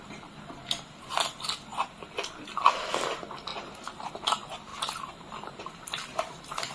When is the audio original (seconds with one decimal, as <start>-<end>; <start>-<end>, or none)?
0.0-3.5; 4.1-4.7; 5.6-6.7